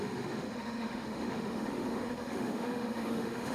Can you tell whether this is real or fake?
fake